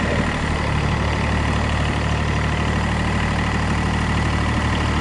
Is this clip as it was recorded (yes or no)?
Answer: yes